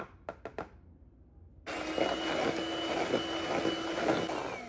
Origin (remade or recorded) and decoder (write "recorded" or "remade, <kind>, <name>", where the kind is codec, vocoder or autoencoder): recorded